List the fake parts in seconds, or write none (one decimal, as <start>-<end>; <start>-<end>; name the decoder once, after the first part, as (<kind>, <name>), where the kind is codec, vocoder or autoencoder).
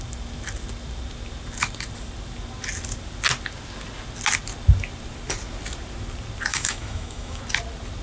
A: 6.5-7.4 (autoencoder, DAC-VAE)